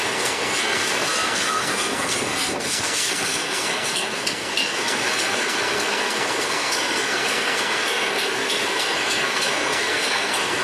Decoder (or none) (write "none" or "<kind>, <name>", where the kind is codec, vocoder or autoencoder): codec, SNAC